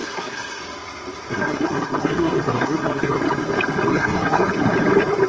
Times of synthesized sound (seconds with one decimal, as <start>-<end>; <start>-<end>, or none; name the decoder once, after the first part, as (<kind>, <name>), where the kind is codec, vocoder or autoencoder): 0.0-0.6 (codec, SNAC); 1.3-3.2; 3.9-4.5